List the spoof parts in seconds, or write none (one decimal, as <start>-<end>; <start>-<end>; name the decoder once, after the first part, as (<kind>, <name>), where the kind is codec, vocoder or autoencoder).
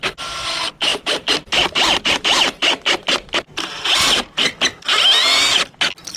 0.9-4.6 (vocoder, BigVGAN v2)